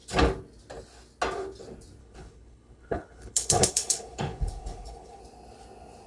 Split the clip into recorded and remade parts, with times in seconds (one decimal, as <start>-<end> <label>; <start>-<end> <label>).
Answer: 0.0-2.0 recorded; 2.0-5.2 remade; 5.2-6.1 recorded